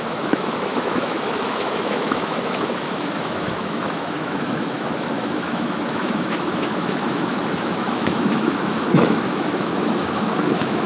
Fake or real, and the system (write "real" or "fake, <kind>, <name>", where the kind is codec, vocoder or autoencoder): fake, autoencoder, DAC-VAE